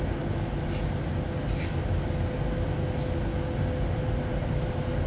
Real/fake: real